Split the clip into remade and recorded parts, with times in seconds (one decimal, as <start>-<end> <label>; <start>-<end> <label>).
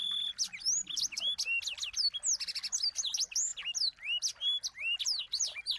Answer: 0.0-5.8 recorded